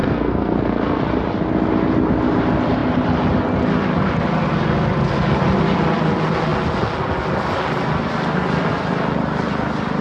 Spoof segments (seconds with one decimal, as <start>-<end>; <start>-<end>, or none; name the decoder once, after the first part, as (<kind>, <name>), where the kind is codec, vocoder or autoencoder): 0.0-1.0 (codec, SNAC)